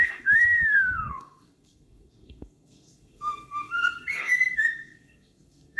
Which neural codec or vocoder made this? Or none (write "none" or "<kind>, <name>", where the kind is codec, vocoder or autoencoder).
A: codec, SNAC